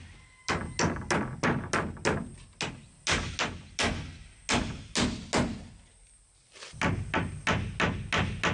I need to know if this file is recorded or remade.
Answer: recorded